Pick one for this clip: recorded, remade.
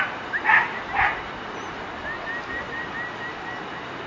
recorded